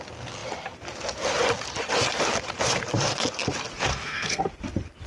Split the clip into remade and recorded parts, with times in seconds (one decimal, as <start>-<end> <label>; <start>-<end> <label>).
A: 0.0-3.9 recorded; 3.9-4.4 remade; 4.4-5.1 recorded